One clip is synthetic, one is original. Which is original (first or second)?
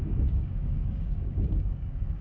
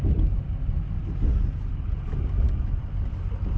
second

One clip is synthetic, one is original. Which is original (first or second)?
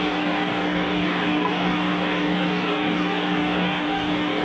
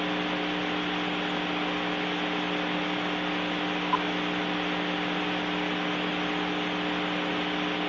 second